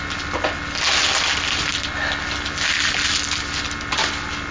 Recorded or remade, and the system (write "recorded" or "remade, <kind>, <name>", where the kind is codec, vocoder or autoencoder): recorded